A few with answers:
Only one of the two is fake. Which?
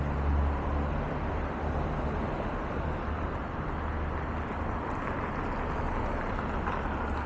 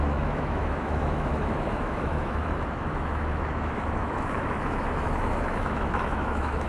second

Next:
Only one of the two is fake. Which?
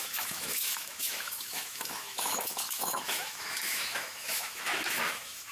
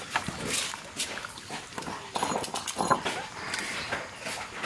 first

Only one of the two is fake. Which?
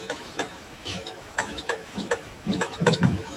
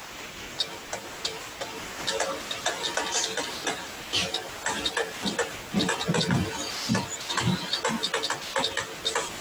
first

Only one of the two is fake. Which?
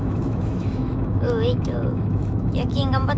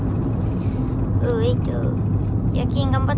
first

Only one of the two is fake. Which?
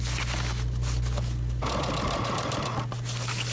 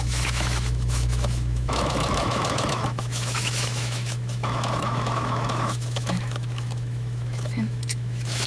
second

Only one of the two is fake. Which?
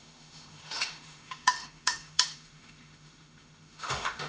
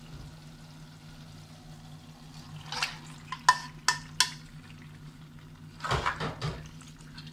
first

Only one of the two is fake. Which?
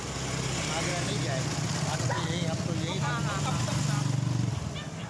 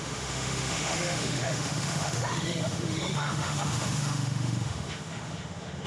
second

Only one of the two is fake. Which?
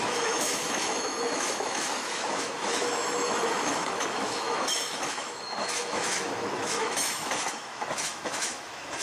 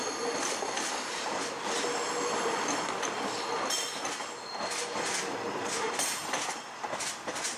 first